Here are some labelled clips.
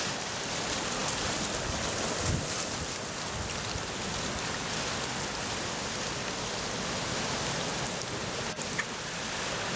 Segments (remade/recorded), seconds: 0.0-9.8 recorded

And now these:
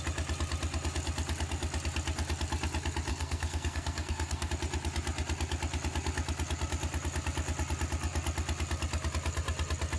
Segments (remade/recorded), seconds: 0.0-3.1 recorded; 3.1-4.5 remade; 4.5-10.0 recorded

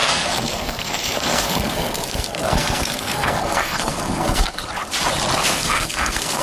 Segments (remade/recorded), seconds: 0.0-4.6 remade; 4.6-5.4 recorded; 5.4-6.4 remade

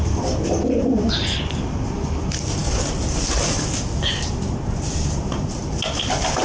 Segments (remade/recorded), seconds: 0.0-6.4 recorded

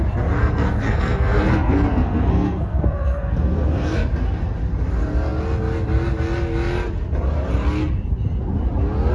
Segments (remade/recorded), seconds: 0.0-0.4 recorded; 0.4-4.1 remade; 4.1-9.1 recorded